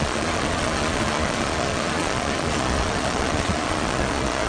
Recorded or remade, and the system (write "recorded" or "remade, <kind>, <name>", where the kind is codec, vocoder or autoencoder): remade, vocoder, Vocos